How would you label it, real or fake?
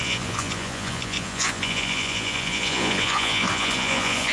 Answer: fake